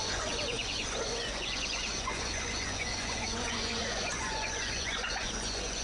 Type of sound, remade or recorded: remade